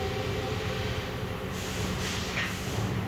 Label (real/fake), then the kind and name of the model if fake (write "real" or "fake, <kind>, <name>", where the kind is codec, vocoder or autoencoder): real